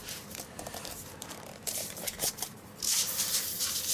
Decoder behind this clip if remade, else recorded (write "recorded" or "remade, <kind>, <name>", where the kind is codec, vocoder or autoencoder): remade, vocoder, BigVGAN v2